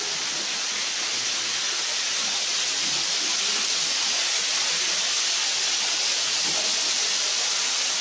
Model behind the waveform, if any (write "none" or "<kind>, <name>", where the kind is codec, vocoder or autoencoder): none